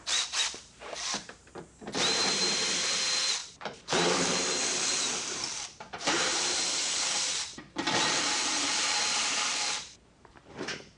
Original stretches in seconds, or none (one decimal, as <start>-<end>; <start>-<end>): none